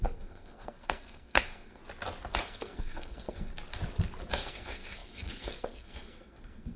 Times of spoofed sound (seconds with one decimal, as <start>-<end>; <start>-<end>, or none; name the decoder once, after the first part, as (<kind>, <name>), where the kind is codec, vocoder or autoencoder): 0.0-1.8 (codec, SNAC); 2.3-3.5; 4.3-6.8